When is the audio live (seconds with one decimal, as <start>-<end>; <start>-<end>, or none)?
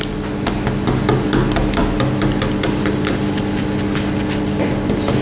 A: 0.0-5.2